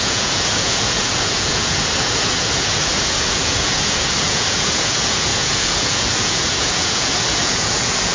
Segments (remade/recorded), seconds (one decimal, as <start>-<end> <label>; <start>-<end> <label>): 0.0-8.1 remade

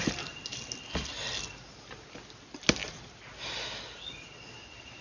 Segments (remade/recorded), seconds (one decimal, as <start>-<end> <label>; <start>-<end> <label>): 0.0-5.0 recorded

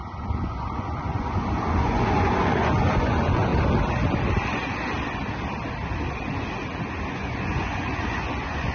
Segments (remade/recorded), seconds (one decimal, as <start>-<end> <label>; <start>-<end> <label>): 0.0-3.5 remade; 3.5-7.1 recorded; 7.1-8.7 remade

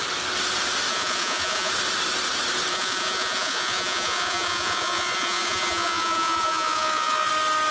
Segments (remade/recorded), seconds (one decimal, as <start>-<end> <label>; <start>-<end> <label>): 0.0-0.9 recorded; 0.9-1.7 remade; 1.7-2.7 recorded; 2.7-7.3 remade; 7.3-7.7 recorded

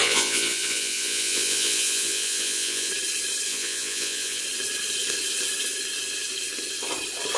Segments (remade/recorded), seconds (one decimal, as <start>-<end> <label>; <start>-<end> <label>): 0.0-2.9 remade; 2.9-3.5 recorded; 3.5-4.4 remade; 4.4-7.4 recorded